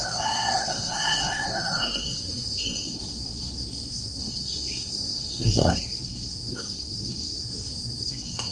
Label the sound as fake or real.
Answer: fake